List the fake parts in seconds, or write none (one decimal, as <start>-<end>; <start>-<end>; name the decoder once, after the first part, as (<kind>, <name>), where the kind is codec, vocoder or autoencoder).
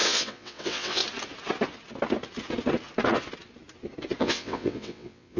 0.0-1.0 (vocoder, WaveNeXt); 4.2-5.4